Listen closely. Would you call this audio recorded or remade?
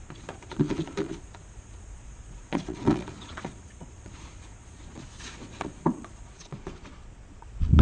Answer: remade